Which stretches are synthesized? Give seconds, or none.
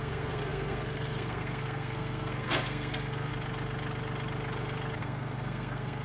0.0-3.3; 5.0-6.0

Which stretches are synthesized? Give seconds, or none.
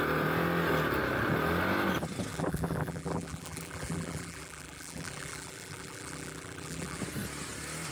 2.3-7.0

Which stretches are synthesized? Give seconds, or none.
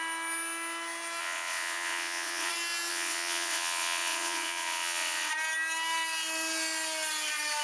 1.2-2.5; 2.9-5.3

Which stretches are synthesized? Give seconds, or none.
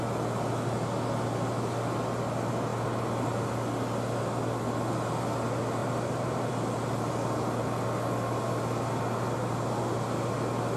5.8-6.5